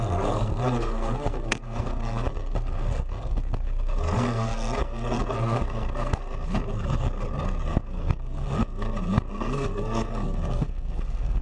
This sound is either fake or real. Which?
fake